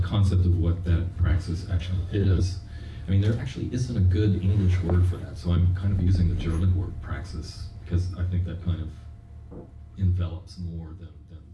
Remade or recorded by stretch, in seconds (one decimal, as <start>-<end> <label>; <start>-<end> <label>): 0.0-1.7 recorded; 1.7-2.4 remade; 2.4-11.5 recorded